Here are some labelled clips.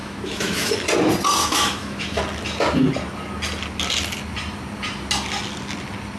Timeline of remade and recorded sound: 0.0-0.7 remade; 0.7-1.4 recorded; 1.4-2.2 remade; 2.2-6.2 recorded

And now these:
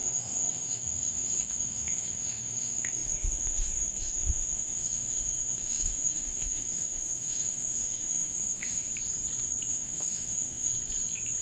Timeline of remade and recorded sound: 0.0-8.9 remade; 8.9-9.7 recorded; 9.7-10.7 remade; 10.7-11.4 recorded

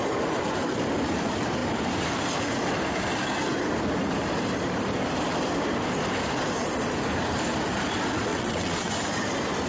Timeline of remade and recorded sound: 0.0-8.3 recorded; 8.3-8.9 remade; 8.9-9.7 recorded

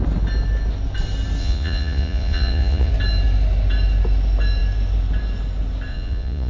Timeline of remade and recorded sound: 0.0-1.4 recorded; 1.4-2.9 remade; 2.9-5.9 recorded; 5.9-6.5 remade

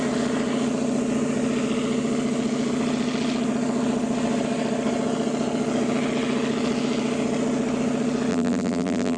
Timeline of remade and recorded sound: 0.0-8.3 recorded; 8.3-9.2 remade